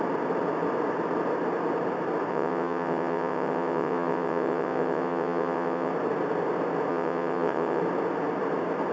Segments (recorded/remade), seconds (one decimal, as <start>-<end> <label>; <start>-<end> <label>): 0.0-2.3 recorded; 2.3-5.9 remade; 5.9-6.9 recorded; 6.9-7.8 remade; 7.8-8.9 recorded